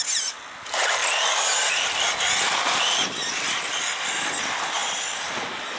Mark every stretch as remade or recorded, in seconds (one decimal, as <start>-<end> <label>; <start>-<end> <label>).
0.0-5.8 recorded